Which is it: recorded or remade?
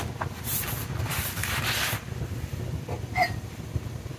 recorded